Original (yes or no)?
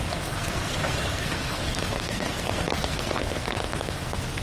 no